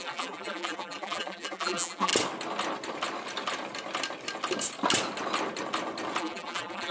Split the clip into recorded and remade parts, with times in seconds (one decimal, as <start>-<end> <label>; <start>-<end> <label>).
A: 0.0-2.1 remade; 2.1-6.2 recorded; 6.2-6.9 remade